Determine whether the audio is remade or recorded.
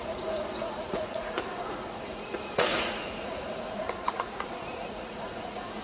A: remade